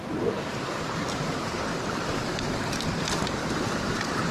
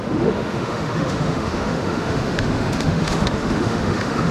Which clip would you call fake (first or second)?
second